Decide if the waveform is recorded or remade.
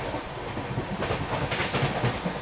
recorded